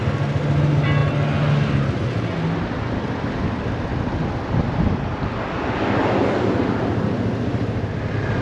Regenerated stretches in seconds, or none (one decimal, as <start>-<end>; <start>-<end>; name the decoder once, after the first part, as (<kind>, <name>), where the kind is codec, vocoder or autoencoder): none